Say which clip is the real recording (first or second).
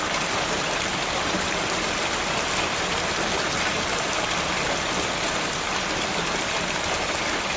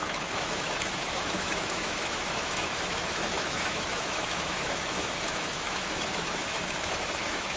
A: first